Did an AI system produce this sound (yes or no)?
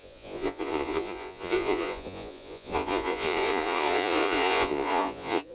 yes